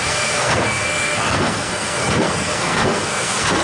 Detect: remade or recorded remade